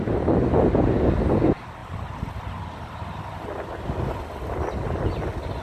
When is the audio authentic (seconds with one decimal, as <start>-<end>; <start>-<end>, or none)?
0.0-5.6